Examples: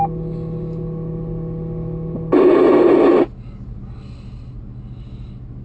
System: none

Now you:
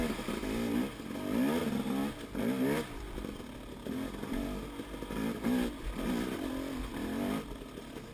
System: none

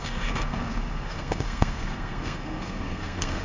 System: codec, SNAC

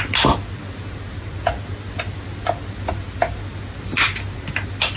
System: none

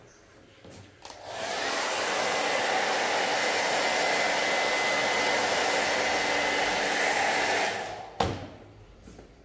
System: none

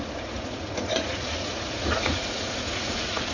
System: vocoder, Vocos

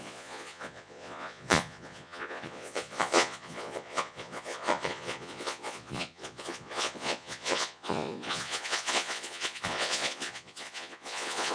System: vocoder, Vocos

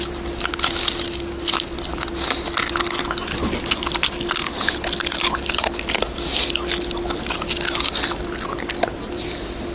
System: none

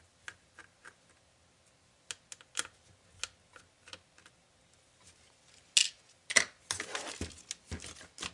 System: none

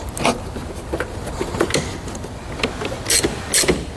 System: none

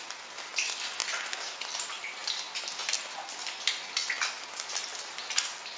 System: none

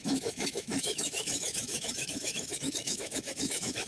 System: autoencoder, DAC-VAE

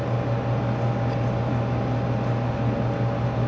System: none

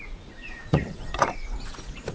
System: vocoder, Vocos